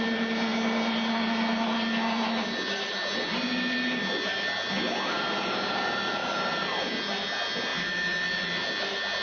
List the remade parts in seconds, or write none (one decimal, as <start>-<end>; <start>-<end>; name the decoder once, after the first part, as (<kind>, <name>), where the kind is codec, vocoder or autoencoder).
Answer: none